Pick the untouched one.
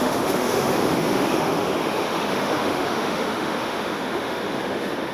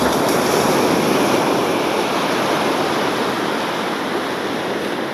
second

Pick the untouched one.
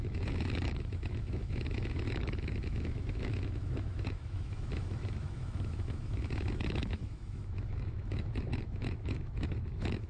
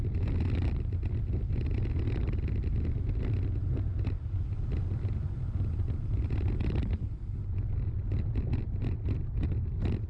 second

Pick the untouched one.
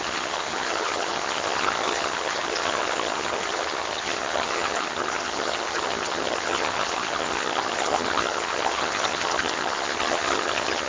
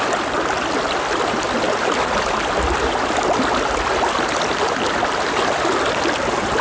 second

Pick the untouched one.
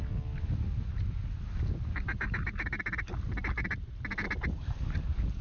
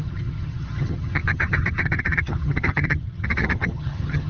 first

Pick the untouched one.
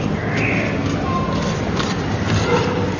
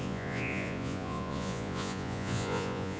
first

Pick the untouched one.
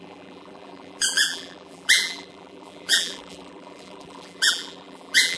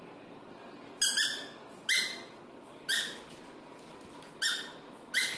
second